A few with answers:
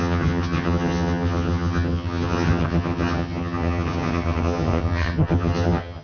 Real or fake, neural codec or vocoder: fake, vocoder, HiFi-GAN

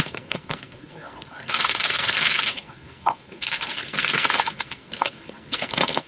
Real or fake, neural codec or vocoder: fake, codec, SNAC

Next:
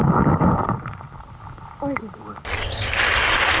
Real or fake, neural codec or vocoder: real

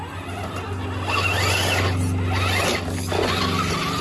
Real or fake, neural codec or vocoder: real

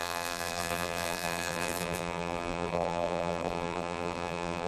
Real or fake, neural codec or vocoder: fake, vocoder, BigVGAN v2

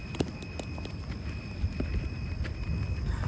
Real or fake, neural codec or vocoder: real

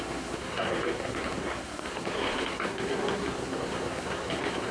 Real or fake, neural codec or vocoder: fake, codec, SNAC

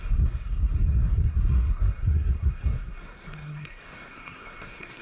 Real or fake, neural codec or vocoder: fake, codec, SNAC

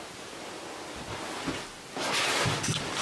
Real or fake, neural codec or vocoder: real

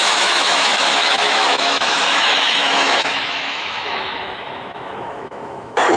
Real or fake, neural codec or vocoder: fake, autoencoder, DAC-VAE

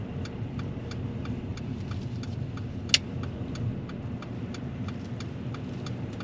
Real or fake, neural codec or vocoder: real